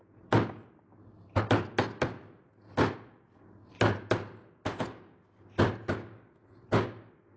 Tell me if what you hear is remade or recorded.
recorded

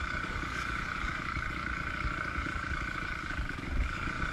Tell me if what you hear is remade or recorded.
remade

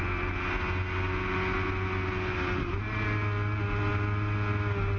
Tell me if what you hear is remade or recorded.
recorded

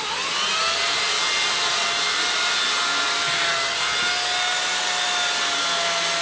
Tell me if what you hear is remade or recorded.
recorded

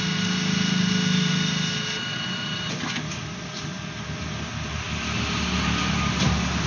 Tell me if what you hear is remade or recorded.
recorded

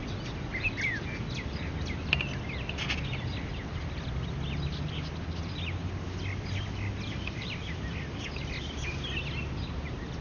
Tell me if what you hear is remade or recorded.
recorded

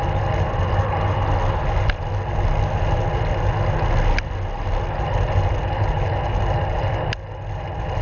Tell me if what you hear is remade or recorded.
recorded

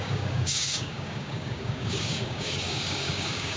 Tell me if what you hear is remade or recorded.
remade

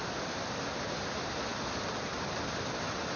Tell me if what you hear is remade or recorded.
recorded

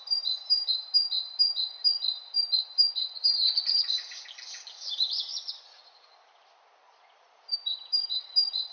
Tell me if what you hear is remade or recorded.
recorded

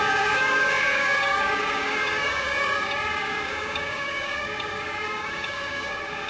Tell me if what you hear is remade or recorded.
remade